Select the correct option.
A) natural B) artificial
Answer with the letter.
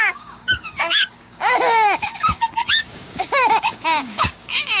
B